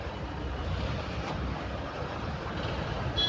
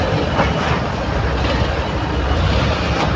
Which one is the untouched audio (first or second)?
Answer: second